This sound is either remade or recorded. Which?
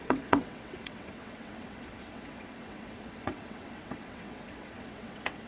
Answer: remade